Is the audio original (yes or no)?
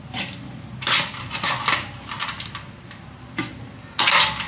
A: yes